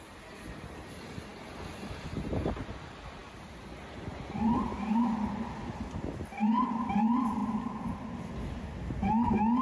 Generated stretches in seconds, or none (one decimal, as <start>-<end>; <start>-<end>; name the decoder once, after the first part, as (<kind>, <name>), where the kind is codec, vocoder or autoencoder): none